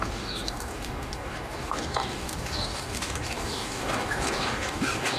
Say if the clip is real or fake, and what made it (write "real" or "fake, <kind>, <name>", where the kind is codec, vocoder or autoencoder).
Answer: fake, codec, DAC